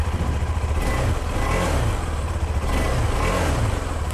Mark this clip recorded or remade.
recorded